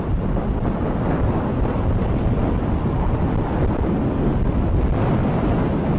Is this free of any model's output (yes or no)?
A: yes